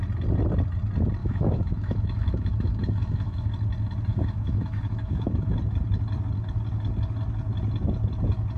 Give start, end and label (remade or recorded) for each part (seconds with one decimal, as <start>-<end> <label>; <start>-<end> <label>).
0.0-1.2 recorded; 1.2-3.5 remade; 3.5-4.1 recorded; 4.1-5.6 remade; 5.6-8.6 recorded